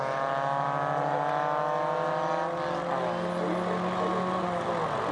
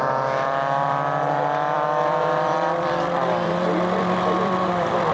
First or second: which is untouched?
first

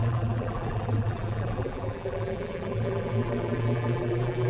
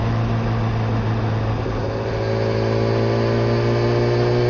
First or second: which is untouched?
second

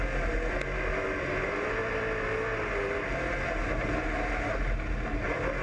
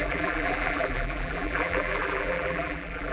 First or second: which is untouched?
first